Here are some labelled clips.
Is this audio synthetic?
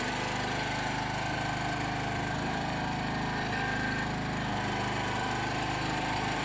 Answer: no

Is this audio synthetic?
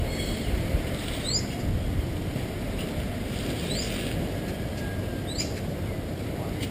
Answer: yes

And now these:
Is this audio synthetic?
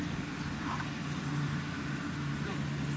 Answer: no